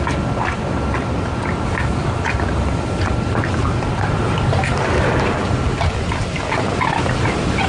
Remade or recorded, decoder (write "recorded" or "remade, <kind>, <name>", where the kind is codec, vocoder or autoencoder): recorded